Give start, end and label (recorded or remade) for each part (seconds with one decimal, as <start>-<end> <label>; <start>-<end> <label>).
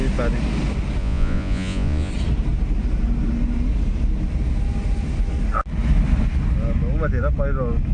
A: 0.0-1.0 recorded; 1.0-2.1 remade; 2.1-7.9 recorded